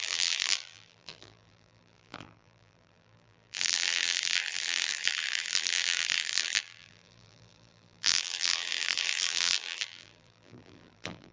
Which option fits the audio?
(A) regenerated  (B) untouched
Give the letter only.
A